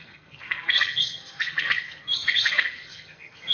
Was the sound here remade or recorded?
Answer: remade